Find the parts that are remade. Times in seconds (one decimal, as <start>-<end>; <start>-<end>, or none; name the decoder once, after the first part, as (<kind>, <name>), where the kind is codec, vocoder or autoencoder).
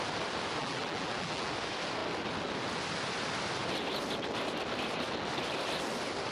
0.6-1.5 (vocoder, BigVGAN v2)